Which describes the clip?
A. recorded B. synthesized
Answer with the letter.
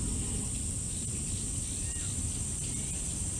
A